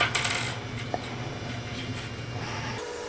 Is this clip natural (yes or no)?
yes